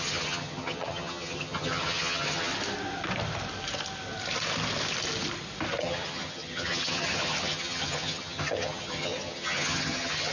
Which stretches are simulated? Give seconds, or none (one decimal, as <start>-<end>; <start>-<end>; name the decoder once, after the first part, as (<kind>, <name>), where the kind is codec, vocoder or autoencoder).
0.0-2.5 (vocoder, HiFi-GAN); 5.8-10.3